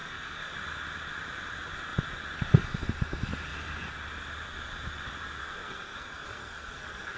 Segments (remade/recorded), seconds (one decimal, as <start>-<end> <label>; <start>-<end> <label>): 0.0-0.5 remade; 0.5-5.4 recorded; 5.4-7.2 remade